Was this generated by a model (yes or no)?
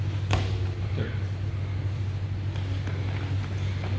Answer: no